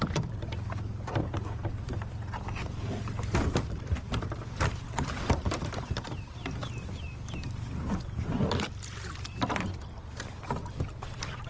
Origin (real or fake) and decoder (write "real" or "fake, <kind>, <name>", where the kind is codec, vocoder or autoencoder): fake, vocoder, BigVGAN v2